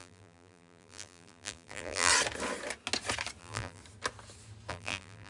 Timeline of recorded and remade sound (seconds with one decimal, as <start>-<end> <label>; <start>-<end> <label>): 0.0-2.1 remade; 2.1-3.4 recorded; 3.4-3.8 remade; 3.8-4.7 recorded; 4.7-5.3 remade